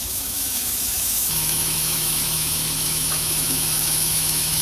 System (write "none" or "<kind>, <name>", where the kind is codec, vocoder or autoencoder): autoencoder, DAC-VAE